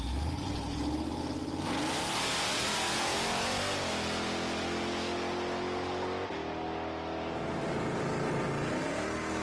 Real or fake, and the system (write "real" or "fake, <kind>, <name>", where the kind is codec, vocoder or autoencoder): real